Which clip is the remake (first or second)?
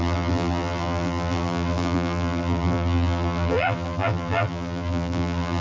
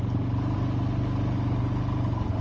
first